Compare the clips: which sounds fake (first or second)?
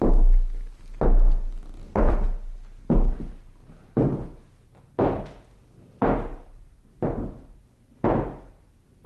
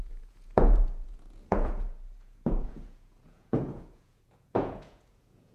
second